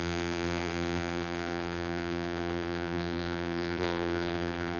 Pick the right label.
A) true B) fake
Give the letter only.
B